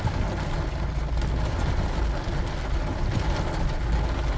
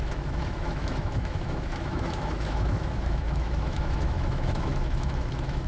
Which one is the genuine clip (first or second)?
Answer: first